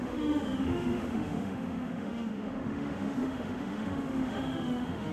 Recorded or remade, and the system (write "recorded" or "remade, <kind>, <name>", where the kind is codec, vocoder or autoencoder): remade, autoencoder, DAC-VAE